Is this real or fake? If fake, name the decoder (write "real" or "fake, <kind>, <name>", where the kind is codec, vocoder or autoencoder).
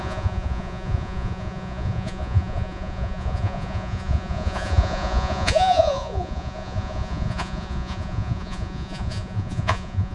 fake, vocoder, Vocos